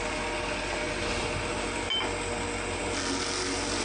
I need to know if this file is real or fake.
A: real